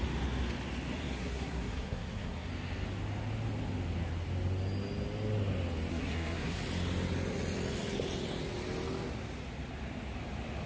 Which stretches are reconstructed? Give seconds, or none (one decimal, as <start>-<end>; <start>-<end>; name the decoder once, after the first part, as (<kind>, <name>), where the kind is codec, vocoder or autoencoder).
1.2-2.5 (codec, SNAC); 5.9-6.6